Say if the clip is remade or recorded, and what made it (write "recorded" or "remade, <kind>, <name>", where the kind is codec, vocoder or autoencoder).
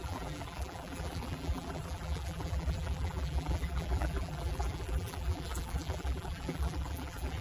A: remade, vocoder, BigVGAN v2